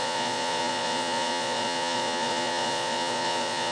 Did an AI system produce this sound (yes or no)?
yes